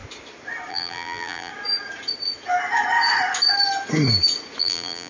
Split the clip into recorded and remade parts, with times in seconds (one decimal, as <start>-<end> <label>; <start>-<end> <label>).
0.0-0.7 recorded; 0.7-1.5 remade; 1.5-4.6 recorded; 4.6-5.1 remade